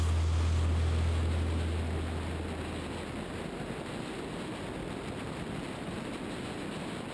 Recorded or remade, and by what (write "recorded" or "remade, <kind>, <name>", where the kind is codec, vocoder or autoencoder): recorded